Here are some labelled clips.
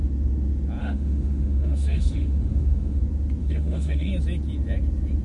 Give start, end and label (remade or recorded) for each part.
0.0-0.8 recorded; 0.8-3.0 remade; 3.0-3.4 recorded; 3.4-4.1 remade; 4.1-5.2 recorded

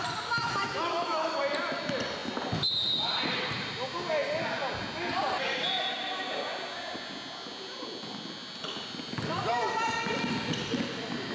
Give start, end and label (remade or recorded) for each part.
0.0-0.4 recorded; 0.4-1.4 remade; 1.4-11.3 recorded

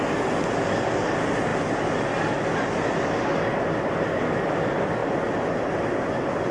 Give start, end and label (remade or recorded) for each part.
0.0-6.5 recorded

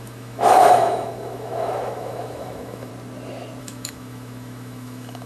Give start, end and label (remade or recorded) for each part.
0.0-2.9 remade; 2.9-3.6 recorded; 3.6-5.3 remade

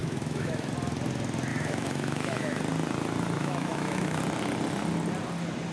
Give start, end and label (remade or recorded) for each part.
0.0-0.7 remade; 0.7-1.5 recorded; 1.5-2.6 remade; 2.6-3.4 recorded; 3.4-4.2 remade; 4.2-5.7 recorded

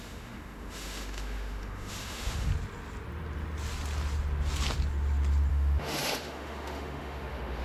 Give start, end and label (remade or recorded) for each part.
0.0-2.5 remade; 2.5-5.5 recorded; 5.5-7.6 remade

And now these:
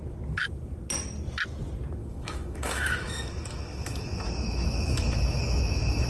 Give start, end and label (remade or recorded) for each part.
0.0-2.0 recorded; 2.0-6.1 remade

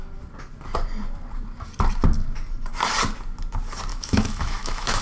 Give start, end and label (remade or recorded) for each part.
0.0-3.9 recorded; 3.9-5.0 remade